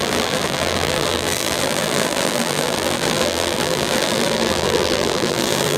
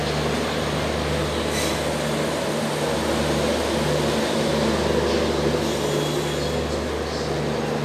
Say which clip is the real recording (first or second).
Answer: second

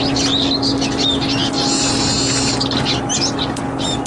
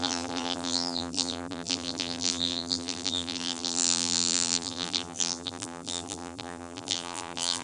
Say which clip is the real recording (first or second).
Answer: first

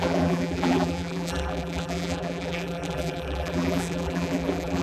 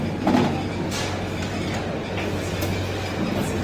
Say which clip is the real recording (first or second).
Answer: second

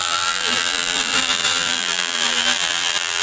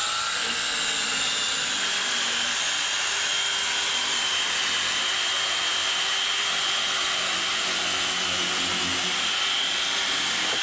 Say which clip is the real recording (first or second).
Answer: second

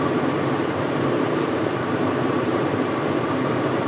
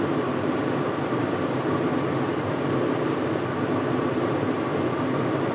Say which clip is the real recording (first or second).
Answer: second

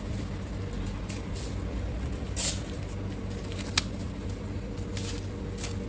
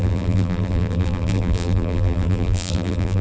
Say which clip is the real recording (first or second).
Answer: first